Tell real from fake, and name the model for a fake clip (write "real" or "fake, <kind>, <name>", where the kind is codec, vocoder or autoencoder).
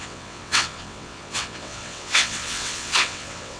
fake, vocoder, WaveNeXt